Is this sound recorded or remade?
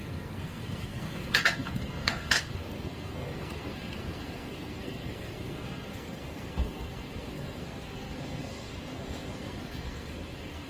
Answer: remade